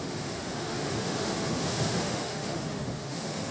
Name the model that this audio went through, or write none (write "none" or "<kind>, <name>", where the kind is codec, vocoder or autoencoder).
autoencoder, DAC-VAE